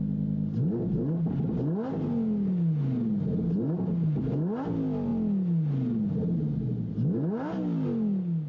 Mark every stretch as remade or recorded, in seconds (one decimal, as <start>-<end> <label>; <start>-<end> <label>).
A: 0.0-8.5 recorded